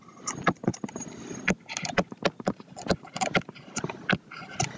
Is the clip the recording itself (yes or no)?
yes